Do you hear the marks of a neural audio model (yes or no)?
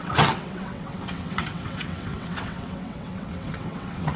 yes